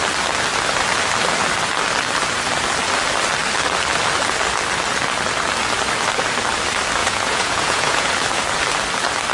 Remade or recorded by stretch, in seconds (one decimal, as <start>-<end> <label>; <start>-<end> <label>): 0.0-7.0 recorded; 7.0-8.1 remade; 8.1-9.3 recorded